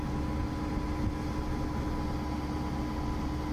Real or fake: real